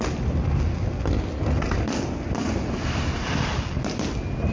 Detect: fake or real real